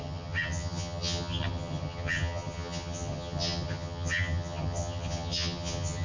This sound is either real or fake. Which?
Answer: fake